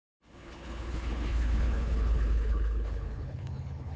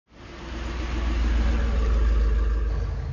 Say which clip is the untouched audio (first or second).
second